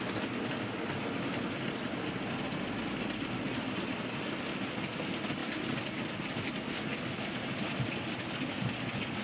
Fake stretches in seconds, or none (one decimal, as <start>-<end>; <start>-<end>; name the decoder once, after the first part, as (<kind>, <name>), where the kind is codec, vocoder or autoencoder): none